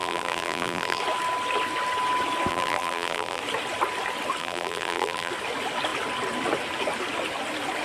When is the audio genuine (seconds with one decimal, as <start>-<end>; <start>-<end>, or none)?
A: 1.0-2.5; 3.4-4.4; 5.3-7.8